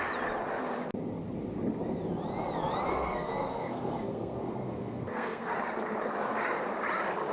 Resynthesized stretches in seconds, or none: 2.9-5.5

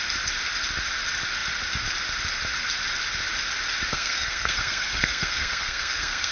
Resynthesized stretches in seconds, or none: 3.9-6.3